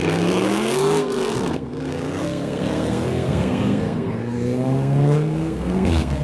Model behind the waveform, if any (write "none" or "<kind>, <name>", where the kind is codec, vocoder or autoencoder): codec, SNAC